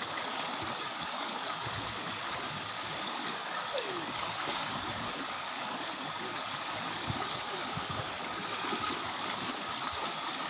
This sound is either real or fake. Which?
fake